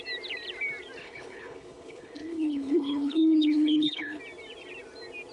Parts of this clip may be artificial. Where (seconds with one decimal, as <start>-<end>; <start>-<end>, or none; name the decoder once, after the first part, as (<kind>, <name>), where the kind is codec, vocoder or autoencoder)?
1.0-4.2 (codec, HILCodec)